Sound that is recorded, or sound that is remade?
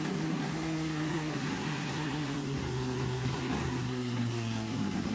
remade